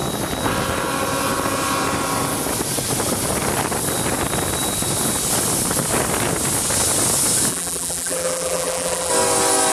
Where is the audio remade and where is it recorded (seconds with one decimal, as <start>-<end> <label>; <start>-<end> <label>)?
0.0-7.5 recorded; 7.5-9.1 remade; 9.1-9.7 recorded